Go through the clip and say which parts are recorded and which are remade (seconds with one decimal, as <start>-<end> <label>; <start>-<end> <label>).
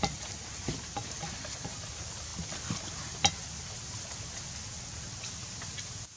0.0-6.2 recorded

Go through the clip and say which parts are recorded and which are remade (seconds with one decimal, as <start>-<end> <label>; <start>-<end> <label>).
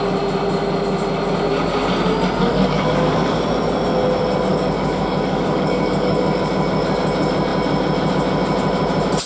0.0-2.4 recorded; 2.4-3.4 remade; 3.4-4.5 recorded; 4.5-6.5 remade; 6.5-9.3 recorded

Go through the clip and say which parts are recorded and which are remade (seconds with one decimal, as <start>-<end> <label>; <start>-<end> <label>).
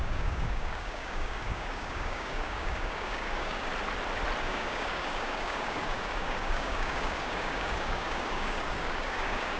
0.0-3.7 remade; 3.7-4.4 recorded; 4.4-9.6 remade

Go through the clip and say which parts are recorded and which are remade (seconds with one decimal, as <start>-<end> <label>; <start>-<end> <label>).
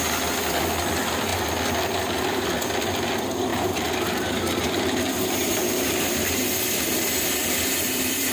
0.0-3.5 recorded; 3.5-6.8 remade; 6.8-7.4 recorded; 7.4-8.3 remade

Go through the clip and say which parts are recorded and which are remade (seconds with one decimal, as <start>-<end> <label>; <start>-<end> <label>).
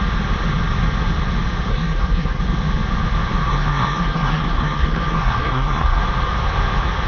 0.0-1.7 recorded; 1.7-2.4 remade; 2.4-3.5 recorded; 3.5-6.0 remade; 6.0-7.1 recorded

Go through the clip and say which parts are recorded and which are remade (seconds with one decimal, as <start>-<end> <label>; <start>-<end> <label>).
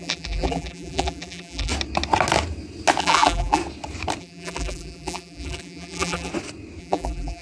0.0-1.7 remade; 1.7-3.0 recorded; 3.0-3.6 remade; 3.6-4.2 recorded; 4.2-6.3 remade; 6.3-6.8 recorded; 6.8-7.4 remade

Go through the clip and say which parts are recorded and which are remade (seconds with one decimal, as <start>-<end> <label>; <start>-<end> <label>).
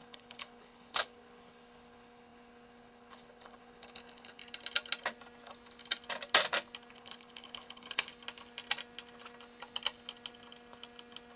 0.0-4.4 remade; 4.4-6.9 recorded; 6.9-8.1 remade; 8.1-11.4 recorded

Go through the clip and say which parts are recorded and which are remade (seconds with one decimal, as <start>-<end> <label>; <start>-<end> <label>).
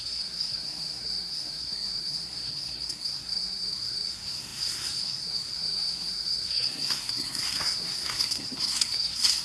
0.0-9.4 remade